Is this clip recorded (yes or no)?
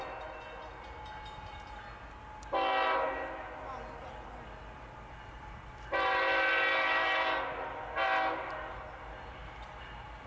yes